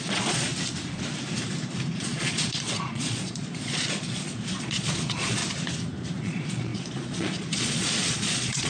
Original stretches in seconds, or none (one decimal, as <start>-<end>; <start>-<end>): 0.5-1.9; 5.4-6.2